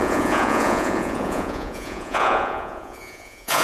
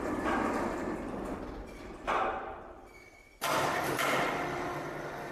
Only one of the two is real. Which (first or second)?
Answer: second